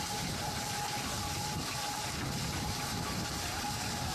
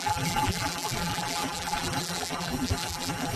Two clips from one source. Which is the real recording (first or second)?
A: first